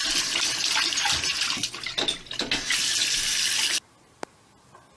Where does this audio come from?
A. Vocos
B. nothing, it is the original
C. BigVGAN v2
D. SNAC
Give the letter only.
B